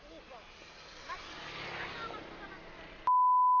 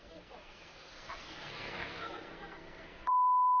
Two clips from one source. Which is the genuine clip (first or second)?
first